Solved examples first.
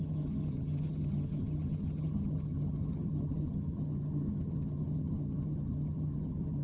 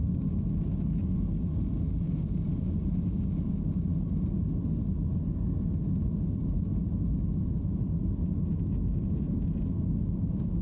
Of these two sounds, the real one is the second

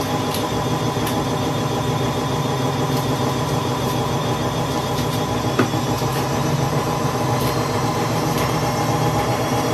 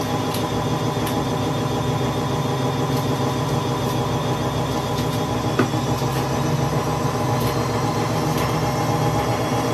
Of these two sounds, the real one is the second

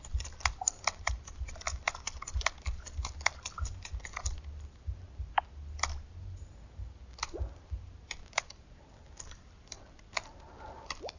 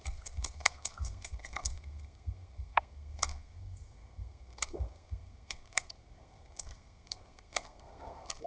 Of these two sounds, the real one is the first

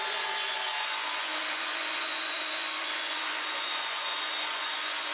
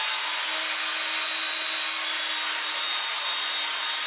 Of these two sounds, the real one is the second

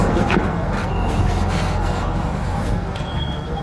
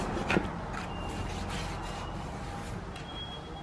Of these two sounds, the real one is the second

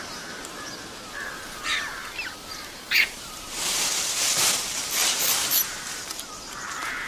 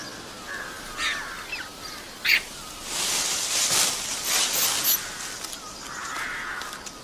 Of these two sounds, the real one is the second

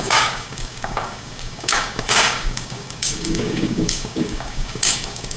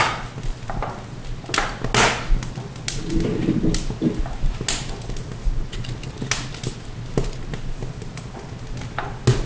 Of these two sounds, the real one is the second